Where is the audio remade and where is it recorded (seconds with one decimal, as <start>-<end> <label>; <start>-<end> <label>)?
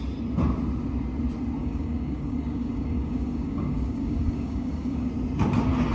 0.0-1.6 recorded; 1.6-5.1 remade; 5.1-5.9 recorded